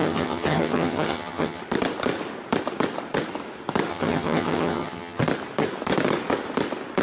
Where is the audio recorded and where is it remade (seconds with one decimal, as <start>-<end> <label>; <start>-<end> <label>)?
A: 0.0-1.6 remade; 1.6-3.9 recorded; 3.9-5.2 remade; 5.2-7.0 recorded